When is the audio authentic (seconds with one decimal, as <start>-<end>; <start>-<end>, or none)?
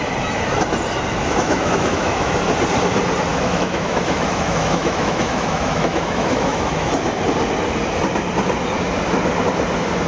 0.0-1.2; 2.3-3.3; 6.9-10.1